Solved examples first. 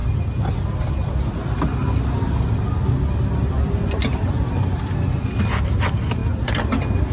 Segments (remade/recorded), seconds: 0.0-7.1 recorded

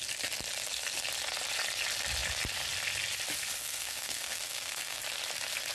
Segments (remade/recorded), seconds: 0.0-3.6 recorded; 3.6-5.0 remade; 5.0-5.7 recorded

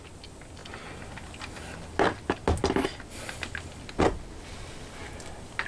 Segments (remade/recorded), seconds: 0.0-5.7 recorded

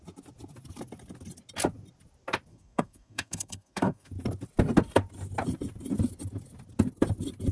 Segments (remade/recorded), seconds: 0.0-2.5 recorded; 2.5-4.1 remade; 4.1-7.5 recorded